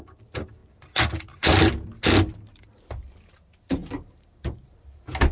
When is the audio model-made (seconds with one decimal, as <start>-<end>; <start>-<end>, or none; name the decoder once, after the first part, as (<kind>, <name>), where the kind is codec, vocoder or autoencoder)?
none